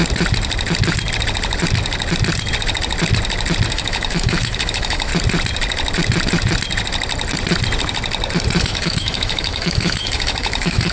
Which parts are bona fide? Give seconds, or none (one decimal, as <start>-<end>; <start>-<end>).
0.0-3.7; 5.1-8.6